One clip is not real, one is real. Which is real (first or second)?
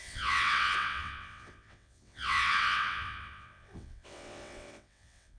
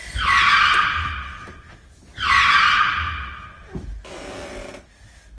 second